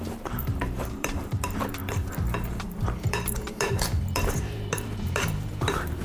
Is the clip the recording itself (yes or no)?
no